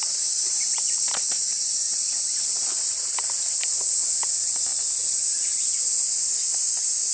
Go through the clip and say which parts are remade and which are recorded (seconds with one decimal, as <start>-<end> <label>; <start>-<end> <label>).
0.0-7.1 recorded